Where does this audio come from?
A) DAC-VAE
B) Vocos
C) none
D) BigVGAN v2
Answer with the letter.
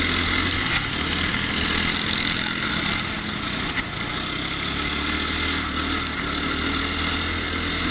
C